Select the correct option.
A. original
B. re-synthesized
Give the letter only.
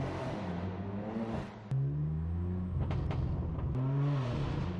A